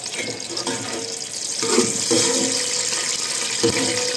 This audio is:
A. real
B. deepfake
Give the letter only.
A